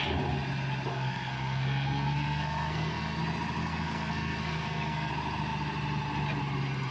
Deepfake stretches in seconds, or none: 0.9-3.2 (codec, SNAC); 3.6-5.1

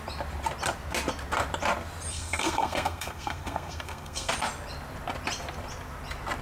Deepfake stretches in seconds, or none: 2.1-4.3 (codec, SNAC)